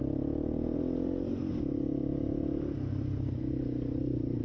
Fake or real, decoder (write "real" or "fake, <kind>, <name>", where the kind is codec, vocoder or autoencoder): real